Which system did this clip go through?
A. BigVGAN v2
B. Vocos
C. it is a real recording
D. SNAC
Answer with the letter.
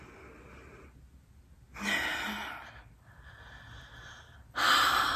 C